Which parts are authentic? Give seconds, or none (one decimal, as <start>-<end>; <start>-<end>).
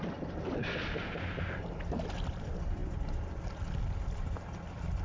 0.0-2.8; 3.3-5.0